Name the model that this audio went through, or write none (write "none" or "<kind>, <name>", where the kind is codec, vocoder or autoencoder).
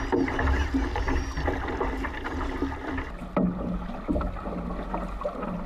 none